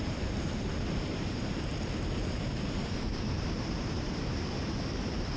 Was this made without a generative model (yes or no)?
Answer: no